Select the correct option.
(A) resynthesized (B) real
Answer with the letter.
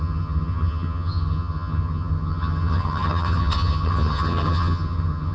A